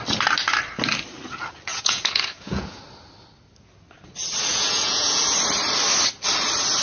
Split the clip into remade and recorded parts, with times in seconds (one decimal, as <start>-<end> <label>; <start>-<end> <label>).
0.0-1.7 recorded; 1.7-2.8 remade; 2.8-4.5 recorded; 4.5-5.2 remade; 5.2-6.8 recorded